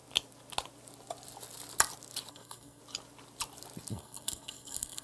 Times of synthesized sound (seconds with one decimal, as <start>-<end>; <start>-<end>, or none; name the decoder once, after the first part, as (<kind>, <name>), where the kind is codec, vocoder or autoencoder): 2.3-2.8 (codec, SNAC); 3.9-5.0